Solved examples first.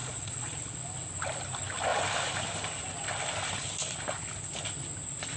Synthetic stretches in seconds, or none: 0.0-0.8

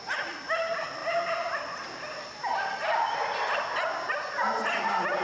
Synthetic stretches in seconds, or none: none

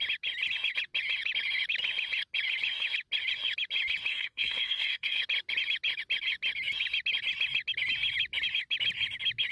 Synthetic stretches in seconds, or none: 4.1-5.2